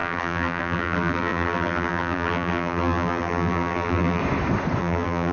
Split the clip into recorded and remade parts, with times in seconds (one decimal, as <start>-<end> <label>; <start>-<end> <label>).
0.0-4.2 remade; 4.2-4.8 recorded; 4.8-5.3 remade

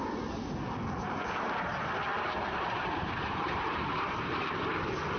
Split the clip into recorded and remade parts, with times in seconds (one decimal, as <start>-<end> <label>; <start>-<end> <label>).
0.0-2.1 recorded; 2.1-4.6 remade; 4.6-5.2 recorded

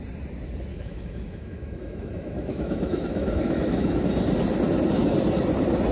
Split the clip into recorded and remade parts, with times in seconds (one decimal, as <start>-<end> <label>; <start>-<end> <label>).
0.0-0.7 recorded; 0.7-4.0 remade; 4.0-5.9 recorded